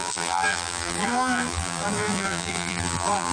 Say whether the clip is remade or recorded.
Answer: remade